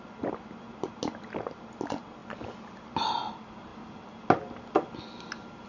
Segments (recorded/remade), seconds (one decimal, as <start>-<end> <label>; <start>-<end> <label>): 0.0-5.7 recorded

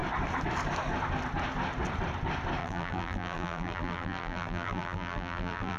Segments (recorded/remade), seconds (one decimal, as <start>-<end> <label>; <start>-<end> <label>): 0.0-2.6 recorded; 2.6-5.8 remade

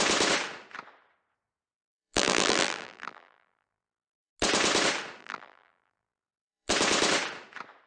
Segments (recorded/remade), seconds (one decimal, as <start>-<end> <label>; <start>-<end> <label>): 0.0-1.8 recorded; 1.8-4.3 remade; 4.3-5.2 recorded; 5.2-6.7 remade; 6.7-7.9 recorded

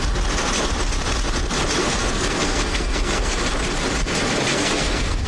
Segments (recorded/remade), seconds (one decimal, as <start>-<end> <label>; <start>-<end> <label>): 0.0-1.8 recorded; 1.8-3.4 remade; 3.4-4.5 recorded; 4.5-5.3 remade

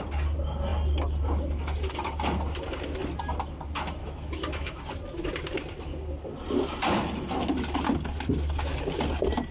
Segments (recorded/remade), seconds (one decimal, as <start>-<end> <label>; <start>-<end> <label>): 0.0-4.0 recorded; 4.0-4.8 remade; 4.8-9.5 recorded